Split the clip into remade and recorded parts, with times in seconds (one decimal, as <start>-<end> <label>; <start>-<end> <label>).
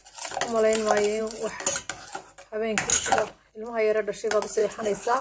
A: 0.0-2.9 recorded; 2.9-3.5 remade; 3.5-4.6 recorded; 4.6-5.2 remade